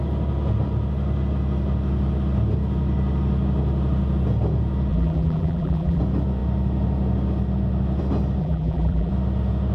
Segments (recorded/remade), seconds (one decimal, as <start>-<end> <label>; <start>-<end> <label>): 0.0-4.9 recorded; 4.9-6.0 remade; 6.0-8.4 recorded; 8.4-9.1 remade; 9.1-9.7 recorded